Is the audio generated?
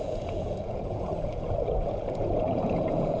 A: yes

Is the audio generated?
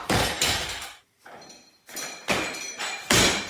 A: yes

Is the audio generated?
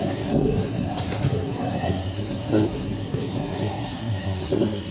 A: yes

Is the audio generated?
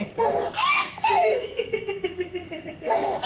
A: yes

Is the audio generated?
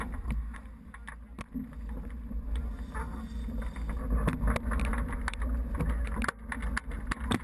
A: no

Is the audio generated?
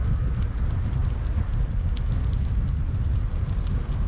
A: no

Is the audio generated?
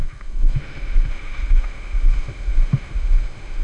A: yes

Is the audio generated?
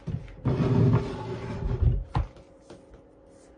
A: no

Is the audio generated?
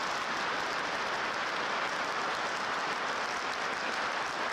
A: no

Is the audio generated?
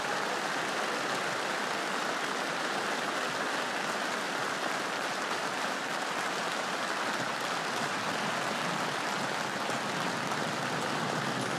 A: no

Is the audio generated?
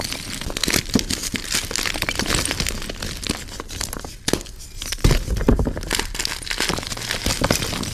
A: no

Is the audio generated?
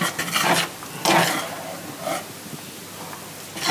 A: no